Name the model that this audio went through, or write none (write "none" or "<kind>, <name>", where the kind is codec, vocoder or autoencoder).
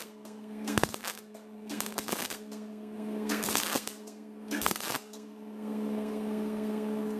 codec, SNAC